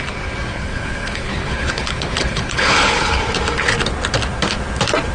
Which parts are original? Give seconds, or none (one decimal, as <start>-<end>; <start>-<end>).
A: 0.0-0.5; 3.3-5.1